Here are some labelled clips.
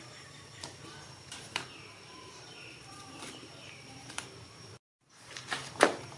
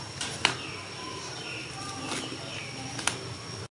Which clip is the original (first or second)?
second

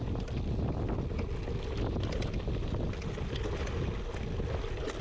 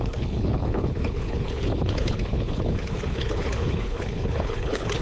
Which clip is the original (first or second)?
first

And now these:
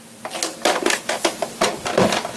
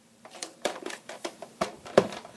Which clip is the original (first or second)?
first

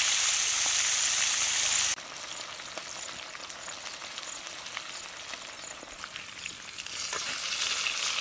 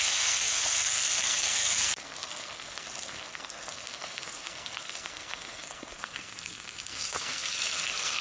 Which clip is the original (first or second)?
first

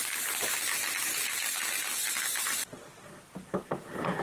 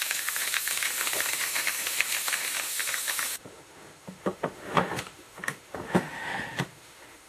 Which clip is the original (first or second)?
first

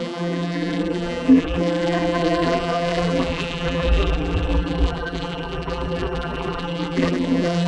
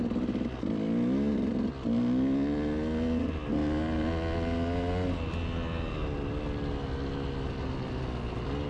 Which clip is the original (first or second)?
second